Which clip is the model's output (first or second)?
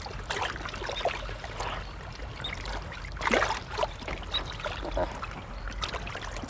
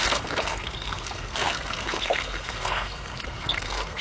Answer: second